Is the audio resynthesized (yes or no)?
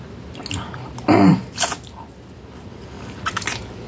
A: no